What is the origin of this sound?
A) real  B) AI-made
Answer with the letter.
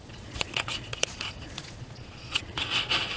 B